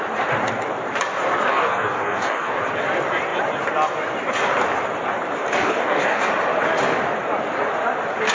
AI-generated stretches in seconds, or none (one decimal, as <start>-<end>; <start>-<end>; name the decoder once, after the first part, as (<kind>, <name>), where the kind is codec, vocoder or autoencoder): 1.5-2.6 (codec, DAC); 5.6-6.3